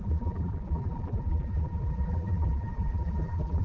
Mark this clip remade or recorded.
remade